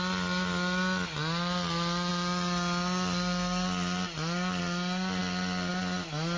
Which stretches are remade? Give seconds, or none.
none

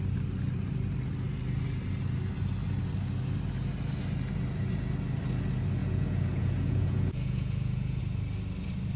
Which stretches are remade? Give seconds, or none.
5.8-8.0 (vocoder, Vocos)

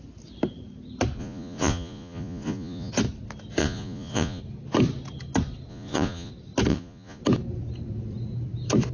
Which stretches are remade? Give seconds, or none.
1.2-2.9 (vocoder, Vocos); 3.6-4.4; 5.7-6.3; 6.7-7.2

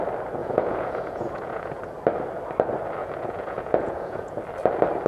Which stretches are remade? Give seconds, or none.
0.4-1.8 (vocoder, Vocos); 3.0-4.4

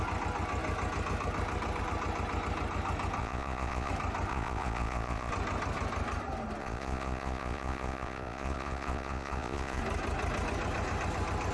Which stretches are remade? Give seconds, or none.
3.2-3.9 (vocoder, Vocos); 4.3-5.3; 6.6-9.8

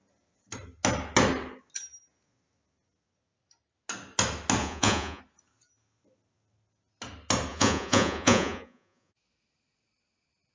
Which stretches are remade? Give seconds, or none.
4.6-5.2 (vocoder, Vocos); 7.5-9.1

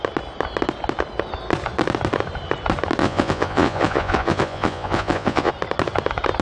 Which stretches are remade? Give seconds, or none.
3.0-5.5 (vocoder, Vocos)